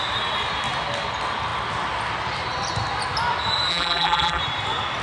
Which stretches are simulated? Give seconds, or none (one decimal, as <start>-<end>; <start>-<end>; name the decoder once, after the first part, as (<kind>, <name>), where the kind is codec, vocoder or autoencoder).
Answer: 3.7-4.4 (vocoder, BigVGAN v2)